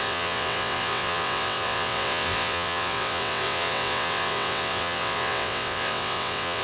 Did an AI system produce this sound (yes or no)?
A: yes